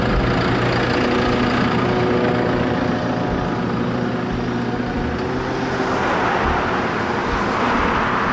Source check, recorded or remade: recorded